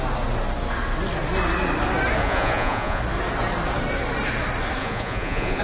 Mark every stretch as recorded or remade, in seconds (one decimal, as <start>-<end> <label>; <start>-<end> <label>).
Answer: 0.0-2.2 recorded; 2.2-3.0 remade; 3.0-4.8 recorded; 4.8-5.6 remade